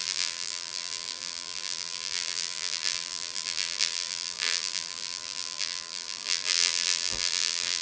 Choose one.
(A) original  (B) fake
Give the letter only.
B